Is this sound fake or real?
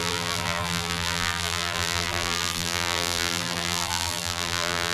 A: fake